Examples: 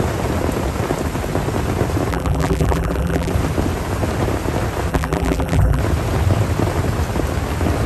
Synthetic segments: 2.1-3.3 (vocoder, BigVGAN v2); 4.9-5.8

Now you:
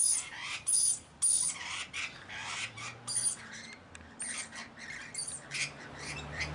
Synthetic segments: 0.0-0.7 (vocoder, BigVGAN v2); 2.4-2.9; 5.5-6.5

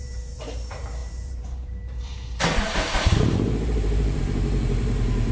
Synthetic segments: 0.0-5.3 (vocoder, BigVGAN v2)

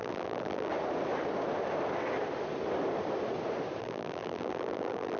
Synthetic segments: 0.0-0.7 (vocoder, BigVGAN v2); 3.8-5.2

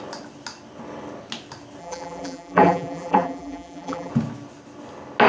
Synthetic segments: 1.8-4.1 (vocoder, BigVGAN v2)

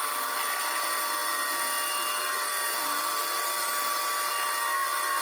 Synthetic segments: none

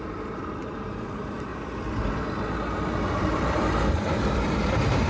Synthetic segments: 0.0-1.5 (vocoder, BigVGAN v2); 3.2-5.1